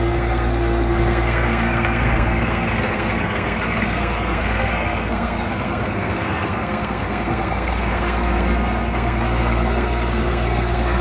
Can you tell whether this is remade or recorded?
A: remade